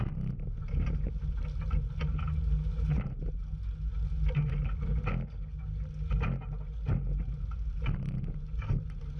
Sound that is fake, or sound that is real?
real